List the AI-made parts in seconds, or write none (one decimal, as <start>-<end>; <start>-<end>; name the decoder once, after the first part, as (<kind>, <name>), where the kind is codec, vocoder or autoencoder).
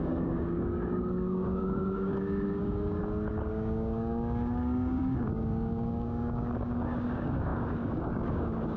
0.0-3.0 (codec, DAC); 3.5-8.8